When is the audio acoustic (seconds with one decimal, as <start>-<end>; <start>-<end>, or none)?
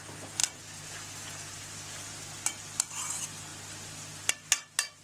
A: 0.0-5.0